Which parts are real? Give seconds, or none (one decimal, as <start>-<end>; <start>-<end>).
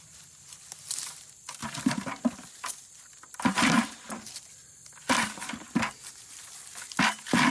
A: 0.0-7.5